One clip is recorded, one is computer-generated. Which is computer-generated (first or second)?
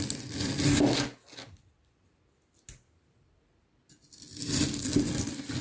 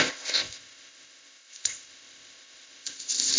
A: second